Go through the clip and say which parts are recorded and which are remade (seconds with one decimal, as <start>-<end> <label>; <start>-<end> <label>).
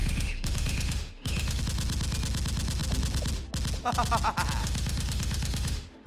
0.0-1.6 remade; 1.6-4.6 recorded; 4.6-6.1 remade